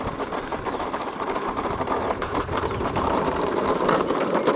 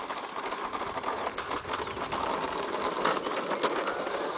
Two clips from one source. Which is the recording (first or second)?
second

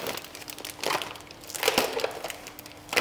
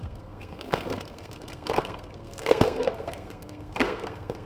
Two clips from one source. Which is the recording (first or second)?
first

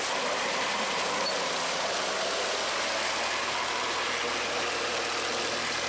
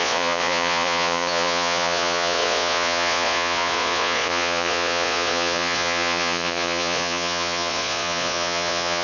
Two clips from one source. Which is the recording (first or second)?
first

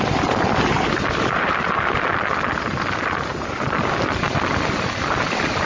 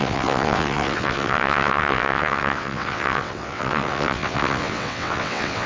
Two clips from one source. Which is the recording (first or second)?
first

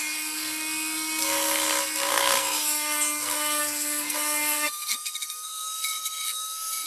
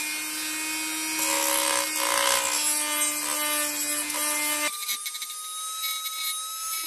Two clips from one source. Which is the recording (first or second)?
second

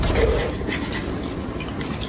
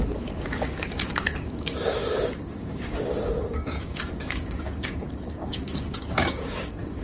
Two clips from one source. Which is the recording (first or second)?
first